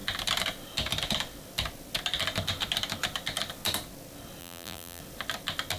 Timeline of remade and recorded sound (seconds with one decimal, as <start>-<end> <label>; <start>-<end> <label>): 0.0-4.4 recorded; 4.4-5.0 remade; 5.0-5.8 recorded